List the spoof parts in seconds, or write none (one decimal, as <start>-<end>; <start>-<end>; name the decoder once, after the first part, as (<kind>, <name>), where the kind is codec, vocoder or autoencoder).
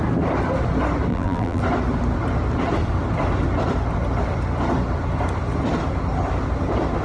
1.1-1.6 (vocoder, BigVGAN v2)